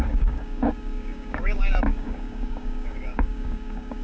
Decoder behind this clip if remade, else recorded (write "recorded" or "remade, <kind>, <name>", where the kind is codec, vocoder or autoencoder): remade, codec, DAC